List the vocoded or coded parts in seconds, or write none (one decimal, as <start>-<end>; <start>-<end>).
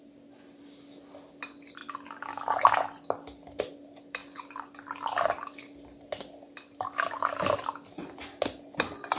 none